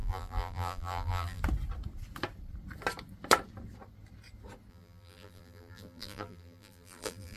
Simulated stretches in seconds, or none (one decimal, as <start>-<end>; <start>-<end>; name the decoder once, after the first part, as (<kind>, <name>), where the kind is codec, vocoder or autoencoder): 0.0-1.4 (vocoder, BigVGAN v2); 4.7-7.4